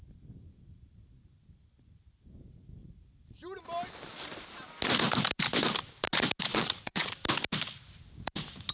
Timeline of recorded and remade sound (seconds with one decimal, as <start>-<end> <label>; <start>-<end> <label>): 0.0-6.5 recorded; 6.5-7.1 remade; 7.1-8.7 recorded